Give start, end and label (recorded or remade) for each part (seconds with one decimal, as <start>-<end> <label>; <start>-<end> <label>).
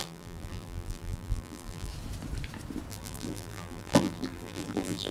0.0-1.9 remade; 1.9-2.9 recorded; 2.9-5.1 remade